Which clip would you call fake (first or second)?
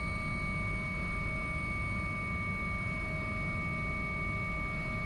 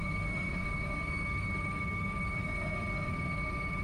second